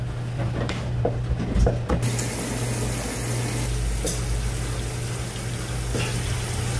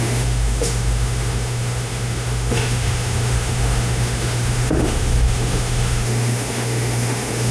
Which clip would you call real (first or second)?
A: first